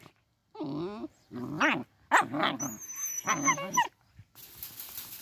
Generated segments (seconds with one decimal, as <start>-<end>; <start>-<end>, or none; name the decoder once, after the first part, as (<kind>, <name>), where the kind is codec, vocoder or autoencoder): none